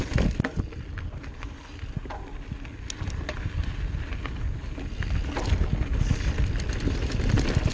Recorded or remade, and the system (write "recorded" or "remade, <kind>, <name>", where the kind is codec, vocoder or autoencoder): recorded